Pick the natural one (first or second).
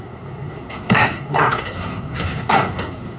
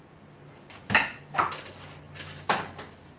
second